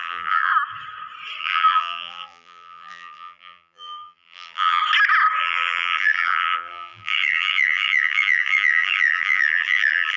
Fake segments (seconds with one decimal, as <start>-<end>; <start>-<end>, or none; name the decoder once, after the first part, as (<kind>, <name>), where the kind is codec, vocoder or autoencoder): 0.0-0.5 (vocoder, BigVGAN v2); 1.4-4.8; 5.4-10.2